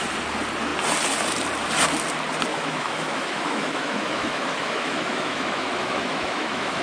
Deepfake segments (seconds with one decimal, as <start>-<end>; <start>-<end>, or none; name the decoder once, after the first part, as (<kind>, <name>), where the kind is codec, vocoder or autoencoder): 2.5-6.8 (autoencoder, DAC-VAE)